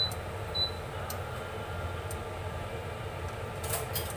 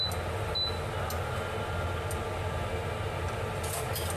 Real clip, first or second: second